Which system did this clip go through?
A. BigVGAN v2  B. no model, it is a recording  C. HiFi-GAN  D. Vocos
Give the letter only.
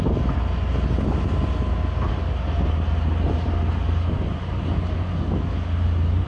B